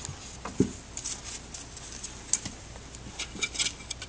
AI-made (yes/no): no